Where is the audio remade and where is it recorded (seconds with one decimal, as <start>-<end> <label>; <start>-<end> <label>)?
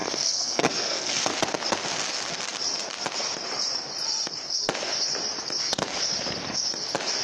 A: 0.0-1.3 remade; 1.3-7.2 recorded